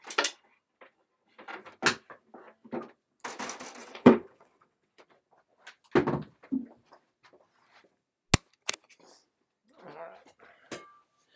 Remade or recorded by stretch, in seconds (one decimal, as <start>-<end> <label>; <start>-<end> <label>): 0.0-3.8 recorded; 3.8-5.0 remade; 5.0-11.4 recorded